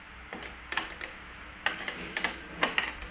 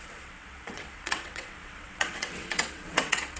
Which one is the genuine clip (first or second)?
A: first